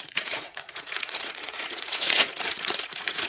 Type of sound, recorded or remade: remade